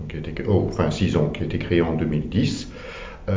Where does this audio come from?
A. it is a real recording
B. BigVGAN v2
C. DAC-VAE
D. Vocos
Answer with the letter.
A